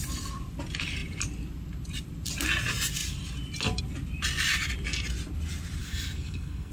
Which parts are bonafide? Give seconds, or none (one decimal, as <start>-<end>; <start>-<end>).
0.0-5.8